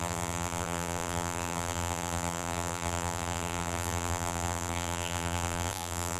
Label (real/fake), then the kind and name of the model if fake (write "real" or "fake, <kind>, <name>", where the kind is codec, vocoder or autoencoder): fake, vocoder, BigVGAN v2